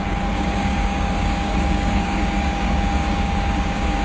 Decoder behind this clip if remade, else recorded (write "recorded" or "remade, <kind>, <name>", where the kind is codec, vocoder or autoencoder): remade, codec, DAC